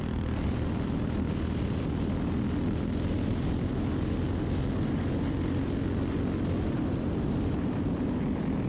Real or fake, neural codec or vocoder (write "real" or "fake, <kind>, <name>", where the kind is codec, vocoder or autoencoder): real